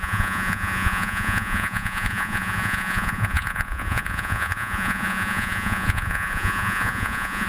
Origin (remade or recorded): remade